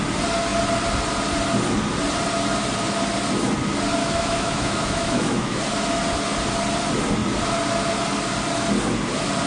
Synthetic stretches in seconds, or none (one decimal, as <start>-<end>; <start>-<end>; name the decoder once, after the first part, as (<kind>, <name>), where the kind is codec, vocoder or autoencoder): 4.0-5.6 (autoencoder, DAC-VAE)